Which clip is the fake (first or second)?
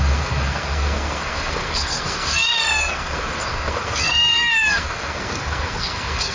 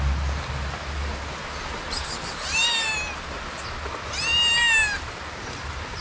first